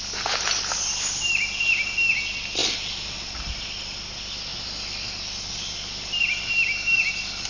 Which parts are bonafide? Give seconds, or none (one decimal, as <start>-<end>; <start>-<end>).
0.0-7.5